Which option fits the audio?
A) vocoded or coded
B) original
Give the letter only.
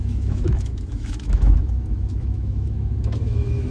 A